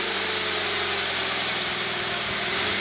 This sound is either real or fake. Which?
real